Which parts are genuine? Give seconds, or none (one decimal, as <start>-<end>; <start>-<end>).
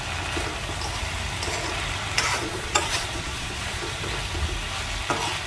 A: 0.0-2.3; 4.0-5.5